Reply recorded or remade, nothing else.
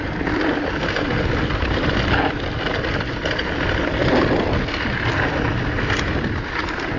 recorded